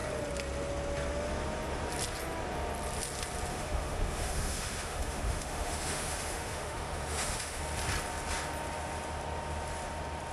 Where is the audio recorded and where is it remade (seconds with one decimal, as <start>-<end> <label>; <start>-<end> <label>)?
0.0-3.5 recorded; 3.5-7.6 remade; 7.6-10.3 recorded